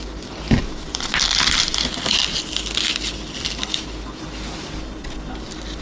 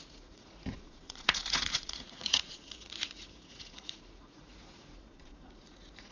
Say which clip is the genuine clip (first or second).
first